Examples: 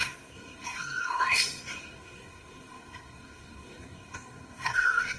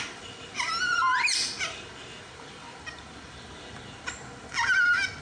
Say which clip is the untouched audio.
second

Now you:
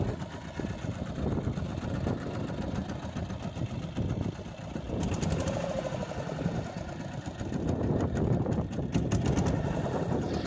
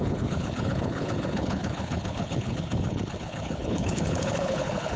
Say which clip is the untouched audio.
first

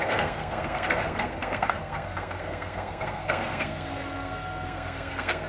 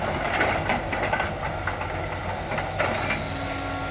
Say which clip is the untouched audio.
second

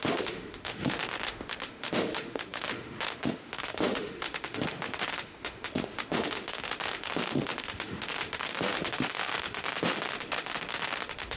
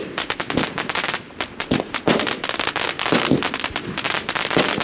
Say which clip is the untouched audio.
second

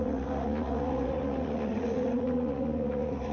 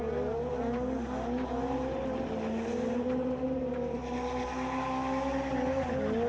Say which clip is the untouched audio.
second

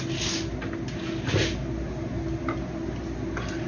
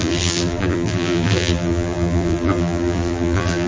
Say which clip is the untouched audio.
first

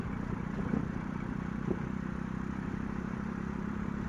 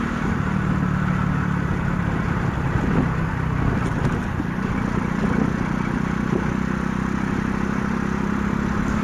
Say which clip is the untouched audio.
second